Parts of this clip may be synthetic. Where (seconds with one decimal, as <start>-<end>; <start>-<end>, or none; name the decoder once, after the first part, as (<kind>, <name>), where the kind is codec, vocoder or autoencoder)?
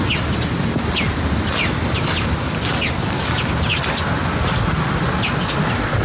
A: none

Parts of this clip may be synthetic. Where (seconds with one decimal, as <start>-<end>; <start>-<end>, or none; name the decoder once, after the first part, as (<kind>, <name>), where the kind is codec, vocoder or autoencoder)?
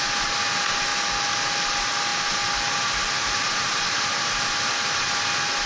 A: none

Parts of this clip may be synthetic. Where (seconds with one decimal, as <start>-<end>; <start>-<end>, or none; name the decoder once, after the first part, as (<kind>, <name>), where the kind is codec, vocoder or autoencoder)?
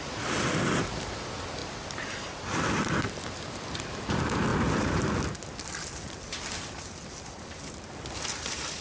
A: 1.6-3.9 (vocoder, BigVGAN v2); 4.5-8.8